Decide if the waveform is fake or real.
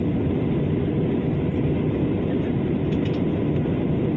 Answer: real